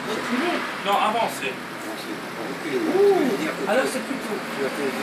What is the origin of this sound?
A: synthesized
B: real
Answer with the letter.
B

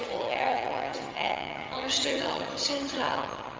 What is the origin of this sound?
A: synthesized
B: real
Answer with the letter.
A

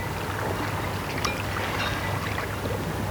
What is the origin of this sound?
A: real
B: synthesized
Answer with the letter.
A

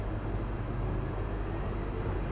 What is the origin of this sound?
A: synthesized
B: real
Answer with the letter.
B